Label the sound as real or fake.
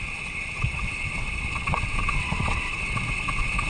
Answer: fake